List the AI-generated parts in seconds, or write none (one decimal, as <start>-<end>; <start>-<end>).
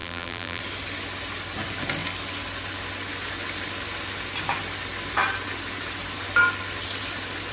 0.0-0.6